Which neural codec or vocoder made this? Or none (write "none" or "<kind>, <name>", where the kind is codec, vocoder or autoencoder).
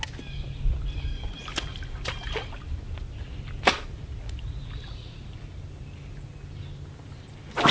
none